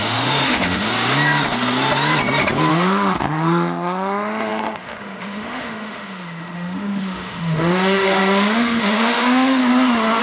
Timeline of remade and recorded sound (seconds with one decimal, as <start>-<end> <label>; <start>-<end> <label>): 0.0-0.9 remade; 0.9-2.7 recorded; 2.7-9.6 remade; 9.6-10.2 recorded